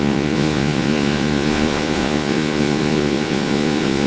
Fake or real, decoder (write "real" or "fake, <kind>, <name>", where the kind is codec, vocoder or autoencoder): fake, vocoder, Vocos